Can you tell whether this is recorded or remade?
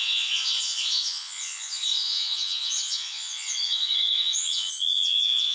remade